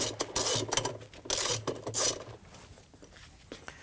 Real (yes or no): yes